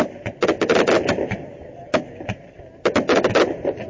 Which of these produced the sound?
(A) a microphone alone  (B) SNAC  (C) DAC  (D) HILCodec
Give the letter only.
A